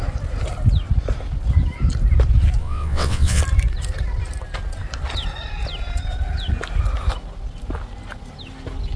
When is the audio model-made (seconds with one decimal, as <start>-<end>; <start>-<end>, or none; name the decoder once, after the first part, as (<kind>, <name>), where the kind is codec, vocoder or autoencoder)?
2.6-3.4 (vocoder, WaveNeXt)